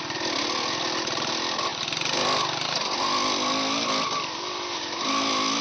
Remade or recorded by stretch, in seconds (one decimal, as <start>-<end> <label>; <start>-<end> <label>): 0.0-5.6 recorded